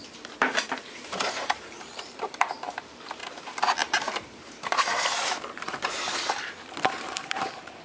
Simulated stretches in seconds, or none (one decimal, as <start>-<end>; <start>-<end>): 0.0-7.8